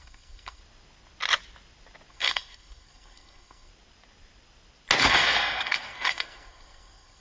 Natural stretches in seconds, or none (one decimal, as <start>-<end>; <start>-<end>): 0.6-2.1; 3.7-5.0